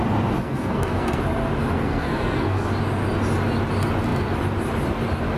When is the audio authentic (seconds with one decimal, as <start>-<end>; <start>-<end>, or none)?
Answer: 0.0-0.4; 1.2-1.7; 2.7-5.4